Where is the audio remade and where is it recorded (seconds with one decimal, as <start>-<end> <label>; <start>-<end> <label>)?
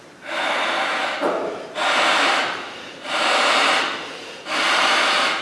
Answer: 0.0-5.4 remade